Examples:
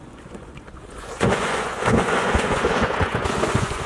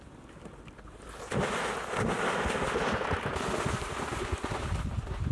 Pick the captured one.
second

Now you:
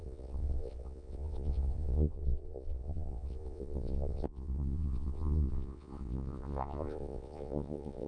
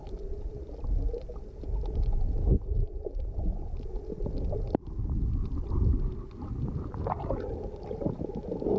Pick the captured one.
second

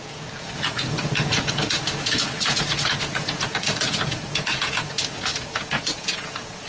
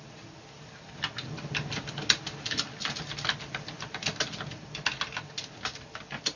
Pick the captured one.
second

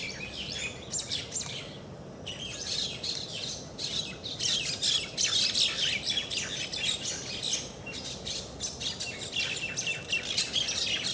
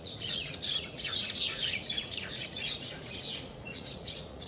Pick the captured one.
first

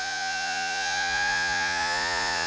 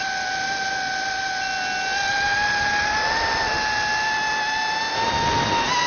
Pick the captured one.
second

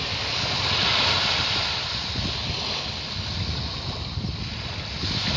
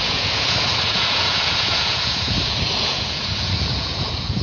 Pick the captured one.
first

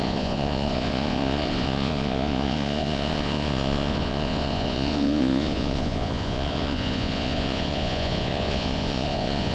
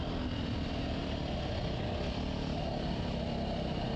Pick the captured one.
second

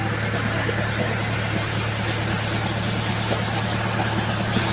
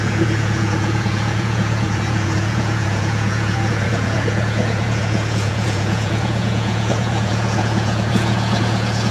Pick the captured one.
first